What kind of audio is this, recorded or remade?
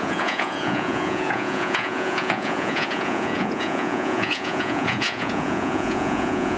remade